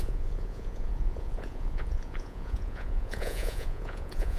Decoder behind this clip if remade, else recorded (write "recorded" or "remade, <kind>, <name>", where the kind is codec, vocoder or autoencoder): remade, vocoder, Vocos